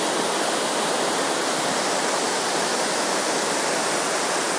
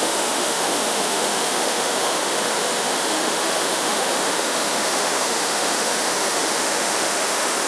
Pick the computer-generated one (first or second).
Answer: second